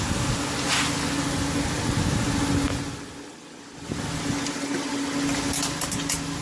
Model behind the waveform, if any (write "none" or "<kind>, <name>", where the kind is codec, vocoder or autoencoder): none